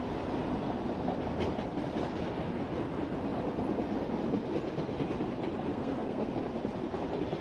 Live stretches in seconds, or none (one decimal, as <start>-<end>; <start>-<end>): 0.0-5.7; 6.3-7.4